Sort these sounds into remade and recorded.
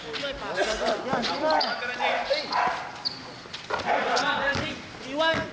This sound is recorded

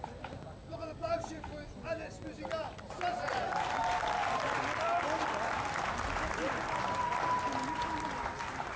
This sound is recorded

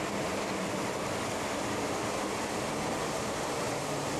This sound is remade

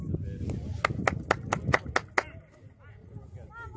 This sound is recorded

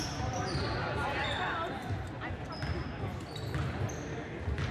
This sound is recorded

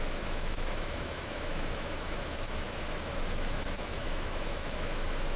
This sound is remade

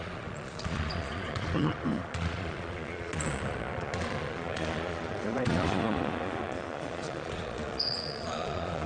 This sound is remade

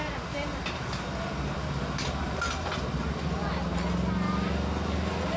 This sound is recorded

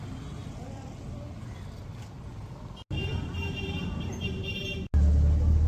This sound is recorded